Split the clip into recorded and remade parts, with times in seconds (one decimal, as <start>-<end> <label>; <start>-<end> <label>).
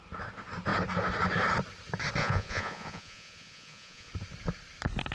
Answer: 0.0-2.2 recorded; 2.2-4.1 remade; 4.1-5.1 recorded